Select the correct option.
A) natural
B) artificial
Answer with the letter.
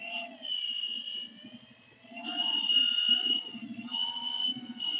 B